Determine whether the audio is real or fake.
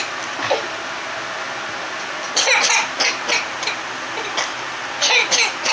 real